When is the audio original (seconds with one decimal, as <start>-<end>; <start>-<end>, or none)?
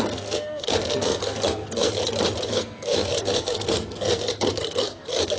2.0-2.5